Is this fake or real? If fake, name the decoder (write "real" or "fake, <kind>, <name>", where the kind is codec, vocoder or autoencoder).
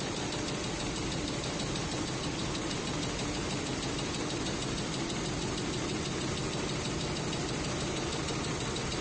real